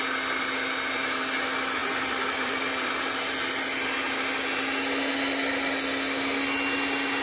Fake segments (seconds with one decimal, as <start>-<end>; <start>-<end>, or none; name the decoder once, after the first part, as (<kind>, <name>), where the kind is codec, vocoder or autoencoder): 1.8-2.9 (vocoder, BigVGAN v2)